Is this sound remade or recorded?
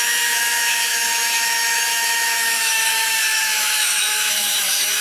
remade